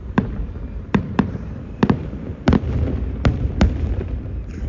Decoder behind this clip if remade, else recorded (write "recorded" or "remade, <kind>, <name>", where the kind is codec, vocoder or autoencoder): remade, vocoder, BigVGAN v2